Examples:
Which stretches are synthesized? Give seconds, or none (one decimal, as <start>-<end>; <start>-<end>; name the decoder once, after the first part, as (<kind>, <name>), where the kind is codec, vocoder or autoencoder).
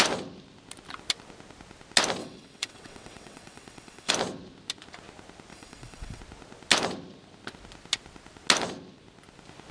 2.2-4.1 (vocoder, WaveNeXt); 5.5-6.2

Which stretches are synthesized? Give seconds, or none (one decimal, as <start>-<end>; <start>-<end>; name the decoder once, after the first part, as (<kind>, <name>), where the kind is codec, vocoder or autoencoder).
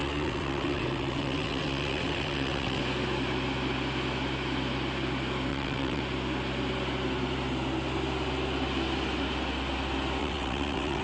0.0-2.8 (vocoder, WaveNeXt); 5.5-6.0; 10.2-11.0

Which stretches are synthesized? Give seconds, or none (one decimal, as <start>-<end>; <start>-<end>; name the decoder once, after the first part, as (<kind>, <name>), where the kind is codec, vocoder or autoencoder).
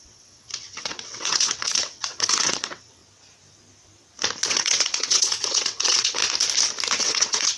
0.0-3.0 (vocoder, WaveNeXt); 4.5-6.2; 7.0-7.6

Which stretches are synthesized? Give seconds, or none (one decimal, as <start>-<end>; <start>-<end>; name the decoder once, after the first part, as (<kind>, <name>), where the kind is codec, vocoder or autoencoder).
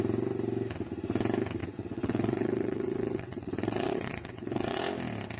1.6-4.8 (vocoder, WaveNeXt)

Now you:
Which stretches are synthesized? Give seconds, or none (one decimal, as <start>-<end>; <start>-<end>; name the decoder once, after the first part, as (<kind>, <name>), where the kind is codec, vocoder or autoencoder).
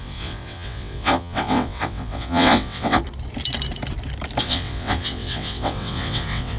0.0-3.0 (vocoder, WaveNeXt); 4.4-6.6